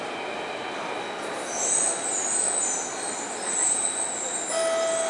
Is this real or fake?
real